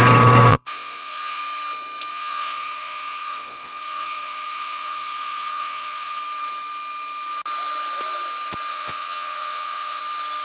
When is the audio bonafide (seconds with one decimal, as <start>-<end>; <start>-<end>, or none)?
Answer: 0.0-0.5; 1.4-2.1; 6.2-8.7; 10.0-10.4